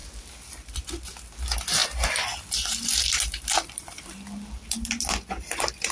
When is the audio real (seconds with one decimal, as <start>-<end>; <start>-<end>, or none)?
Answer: 0.8-1.8; 5.0-5.9